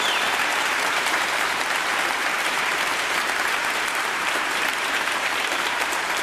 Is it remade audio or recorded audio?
remade